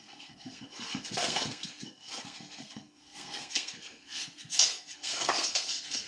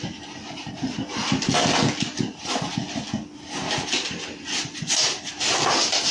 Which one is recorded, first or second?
second